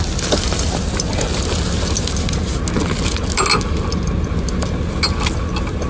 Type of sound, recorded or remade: recorded